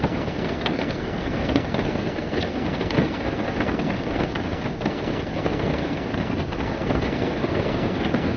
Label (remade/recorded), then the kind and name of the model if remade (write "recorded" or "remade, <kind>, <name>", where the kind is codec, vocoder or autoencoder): remade, codec, SNAC